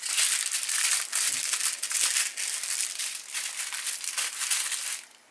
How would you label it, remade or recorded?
recorded